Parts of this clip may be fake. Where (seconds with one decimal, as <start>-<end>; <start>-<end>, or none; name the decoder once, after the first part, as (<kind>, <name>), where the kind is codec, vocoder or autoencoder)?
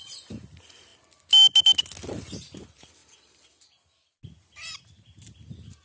none